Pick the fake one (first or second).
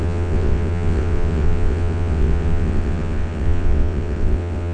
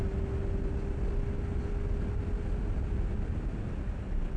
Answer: first